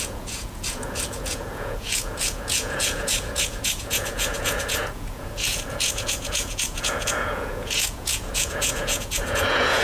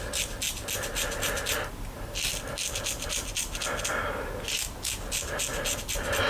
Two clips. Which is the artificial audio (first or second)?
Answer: first